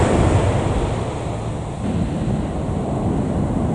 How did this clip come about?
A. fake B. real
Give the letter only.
B